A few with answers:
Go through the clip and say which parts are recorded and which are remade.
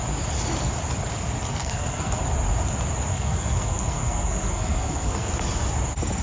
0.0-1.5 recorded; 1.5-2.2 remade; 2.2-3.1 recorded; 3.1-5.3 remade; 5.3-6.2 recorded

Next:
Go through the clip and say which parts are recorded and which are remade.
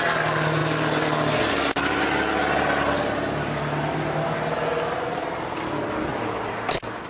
0.0-7.1 recorded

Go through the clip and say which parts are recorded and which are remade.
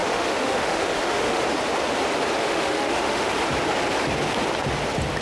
0.0-1.4 remade; 1.4-2.4 recorded; 2.4-3.3 remade; 3.3-5.2 recorded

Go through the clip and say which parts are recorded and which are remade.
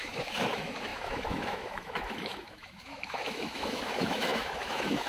0.0-5.1 remade